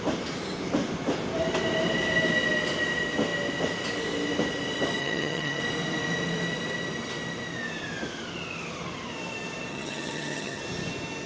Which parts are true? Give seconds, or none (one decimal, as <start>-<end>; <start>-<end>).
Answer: 0.0-5.0; 5.6-9.7; 10.6-11.3